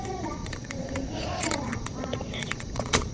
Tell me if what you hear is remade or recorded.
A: remade